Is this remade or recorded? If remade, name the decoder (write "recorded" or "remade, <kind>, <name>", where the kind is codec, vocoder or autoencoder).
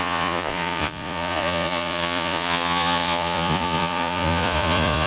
remade, vocoder, Vocos